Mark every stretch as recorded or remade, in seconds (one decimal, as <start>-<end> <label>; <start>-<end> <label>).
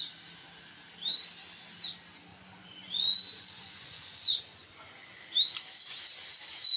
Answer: 0.0-2.3 recorded; 2.3-5.3 remade; 5.3-6.8 recorded